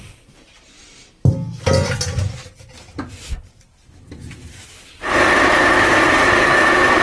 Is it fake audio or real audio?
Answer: real